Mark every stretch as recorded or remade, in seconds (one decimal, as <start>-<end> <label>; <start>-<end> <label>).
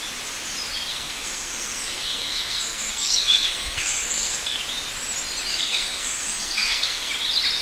0.0-0.9 recorded; 0.9-4.6 remade; 4.6-5.5 recorded; 5.5-7.1 remade; 7.1-7.6 recorded